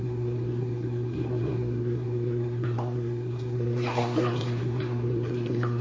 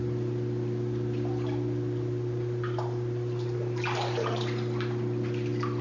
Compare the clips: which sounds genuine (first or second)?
second